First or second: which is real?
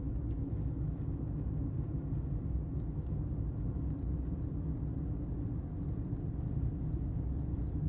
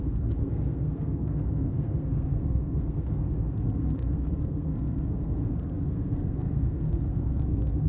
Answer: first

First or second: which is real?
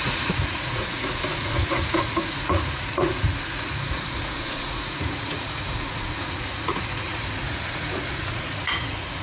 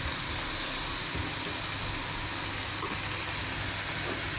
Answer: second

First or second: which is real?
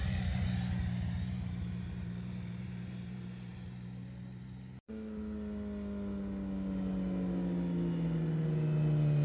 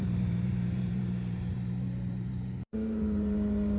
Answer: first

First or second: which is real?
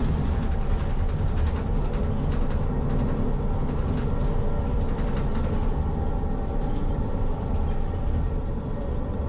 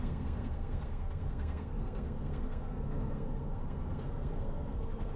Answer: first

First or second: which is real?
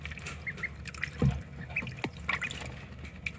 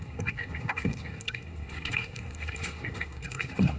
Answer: first